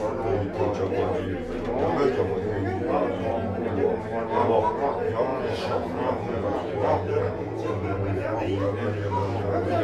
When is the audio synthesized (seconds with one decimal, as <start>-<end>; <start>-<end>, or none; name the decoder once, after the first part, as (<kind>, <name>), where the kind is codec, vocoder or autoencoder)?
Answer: 5.3-7.2 (vocoder, Vocos)